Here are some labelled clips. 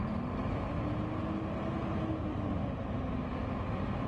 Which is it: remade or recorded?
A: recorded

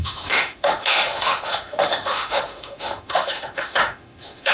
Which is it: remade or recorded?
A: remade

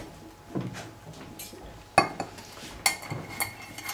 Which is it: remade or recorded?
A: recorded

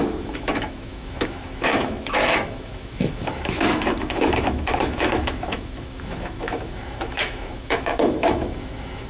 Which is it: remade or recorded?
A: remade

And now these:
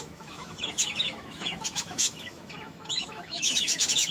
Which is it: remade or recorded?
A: remade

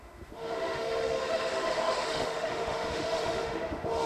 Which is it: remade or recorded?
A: remade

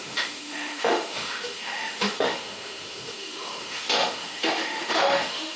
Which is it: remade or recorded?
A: remade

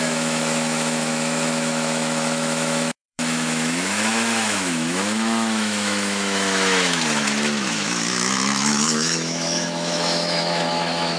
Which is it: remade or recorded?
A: remade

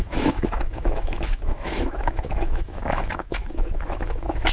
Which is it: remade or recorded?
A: remade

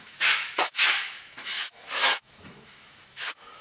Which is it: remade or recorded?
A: remade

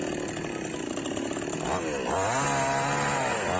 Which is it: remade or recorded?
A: recorded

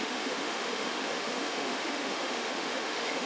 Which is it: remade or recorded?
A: remade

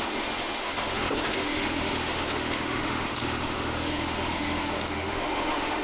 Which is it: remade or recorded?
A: remade